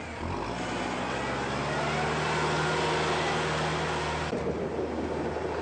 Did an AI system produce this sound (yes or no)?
no